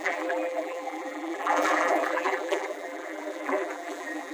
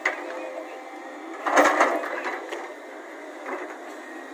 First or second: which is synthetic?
first